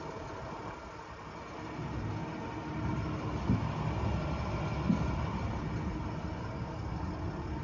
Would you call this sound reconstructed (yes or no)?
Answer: no